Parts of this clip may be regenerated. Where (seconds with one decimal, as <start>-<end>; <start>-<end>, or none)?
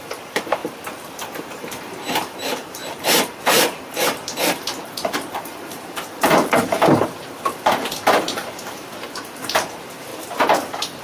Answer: 0.0-0.6; 1.4-10.1